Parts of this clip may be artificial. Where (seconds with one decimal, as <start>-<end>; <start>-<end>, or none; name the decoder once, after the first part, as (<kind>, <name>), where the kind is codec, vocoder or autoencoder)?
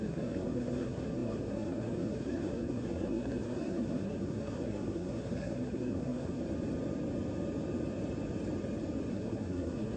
0.0-6.4 (codec, SNAC); 9.1-10.0